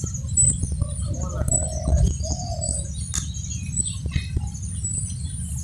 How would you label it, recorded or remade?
recorded